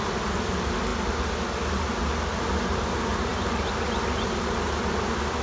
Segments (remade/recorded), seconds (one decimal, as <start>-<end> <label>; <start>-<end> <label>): 0.0-5.4 recorded